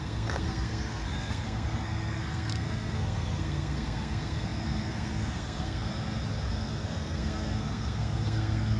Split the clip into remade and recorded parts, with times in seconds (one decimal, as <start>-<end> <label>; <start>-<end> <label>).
0.0-5.9 remade; 5.9-6.5 recorded; 6.5-8.8 remade